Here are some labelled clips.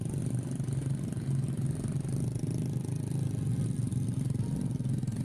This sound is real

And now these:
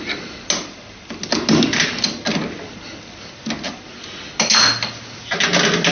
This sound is real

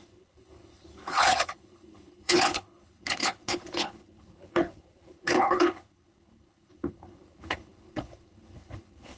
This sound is fake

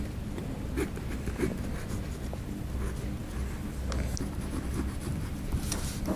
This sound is real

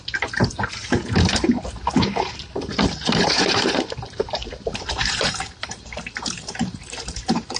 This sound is fake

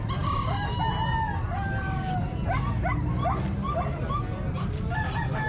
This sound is real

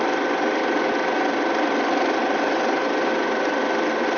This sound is fake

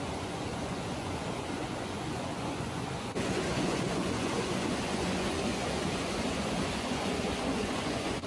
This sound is fake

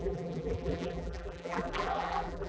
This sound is fake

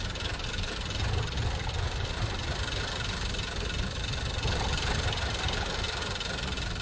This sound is real